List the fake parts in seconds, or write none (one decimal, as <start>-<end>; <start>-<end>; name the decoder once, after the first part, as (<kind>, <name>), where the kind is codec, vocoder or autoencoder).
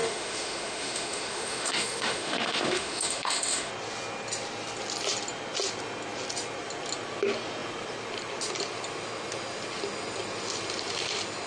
0.0-3.7 (autoencoder, DAC-VAE)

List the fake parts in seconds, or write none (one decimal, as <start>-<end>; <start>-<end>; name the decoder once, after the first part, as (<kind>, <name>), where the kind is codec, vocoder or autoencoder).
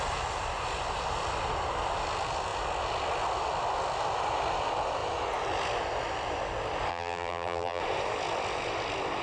6.9-7.8 (vocoder, BigVGAN v2)